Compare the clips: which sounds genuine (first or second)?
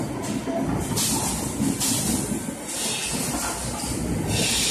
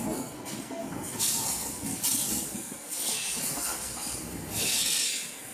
first